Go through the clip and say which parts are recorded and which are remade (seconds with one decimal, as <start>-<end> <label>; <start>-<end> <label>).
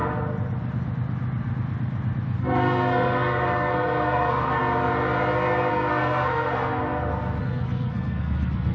0.0-2.4 recorded; 2.4-4.6 remade; 4.6-5.7 recorded; 5.7-6.8 remade; 6.8-7.4 recorded; 7.4-8.7 remade